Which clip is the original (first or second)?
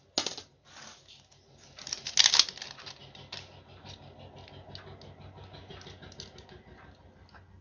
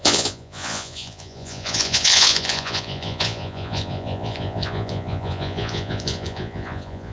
first